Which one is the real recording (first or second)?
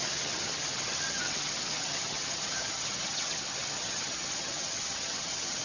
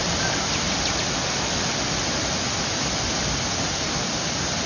second